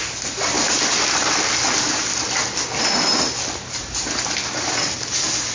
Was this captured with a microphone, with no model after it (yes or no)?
yes